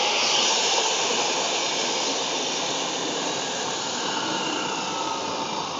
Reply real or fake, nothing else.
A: real